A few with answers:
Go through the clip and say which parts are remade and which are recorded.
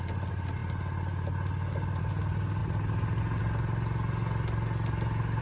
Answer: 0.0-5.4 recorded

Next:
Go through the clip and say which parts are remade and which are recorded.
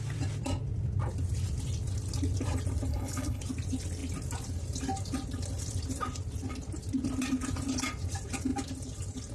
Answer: 0.0-2.9 recorded; 2.9-3.4 remade; 3.4-9.3 recorded